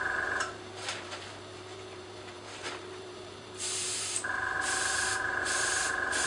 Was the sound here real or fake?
fake